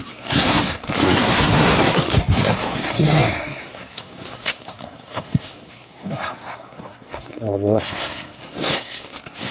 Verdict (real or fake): fake